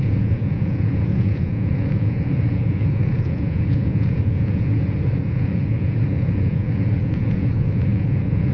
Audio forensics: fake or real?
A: fake